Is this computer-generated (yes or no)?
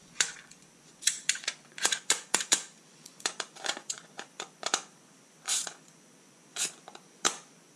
yes